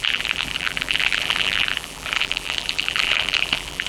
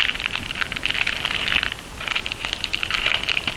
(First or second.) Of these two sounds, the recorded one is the second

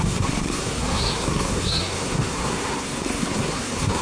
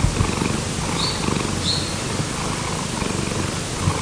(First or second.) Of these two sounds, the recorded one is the second